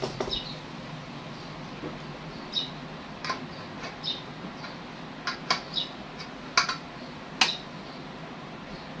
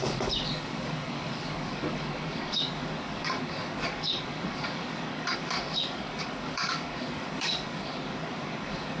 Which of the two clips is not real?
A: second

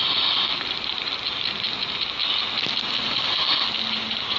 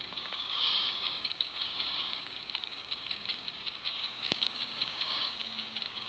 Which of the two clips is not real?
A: second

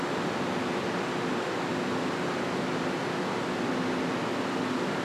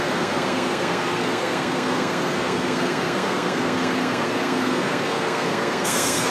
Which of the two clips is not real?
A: second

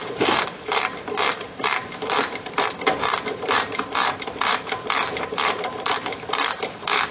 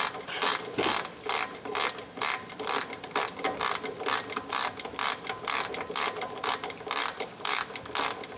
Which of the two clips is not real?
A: first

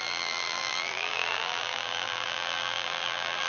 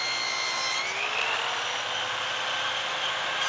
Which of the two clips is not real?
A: first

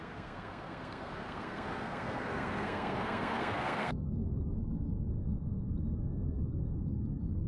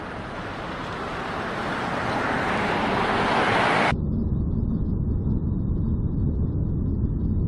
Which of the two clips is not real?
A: first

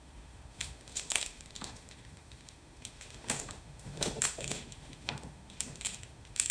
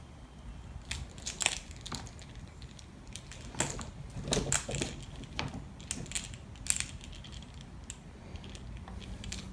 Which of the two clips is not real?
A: first